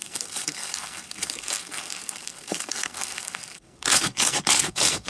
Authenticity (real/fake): fake